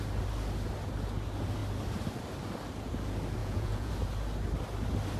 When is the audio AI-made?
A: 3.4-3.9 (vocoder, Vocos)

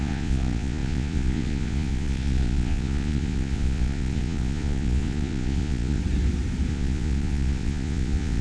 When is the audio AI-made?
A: 0.0-6.0 (vocoder, Vocos); 6.7-8.4

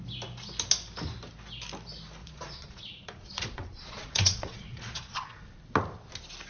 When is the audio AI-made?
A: 2.2-5.6 (vocoder, Vocos)

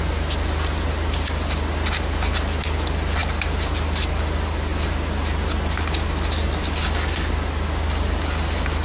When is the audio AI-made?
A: none